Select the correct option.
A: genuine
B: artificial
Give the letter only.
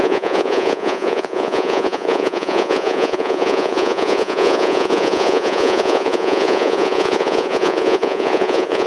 B